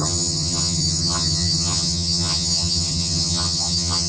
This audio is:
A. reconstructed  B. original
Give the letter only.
A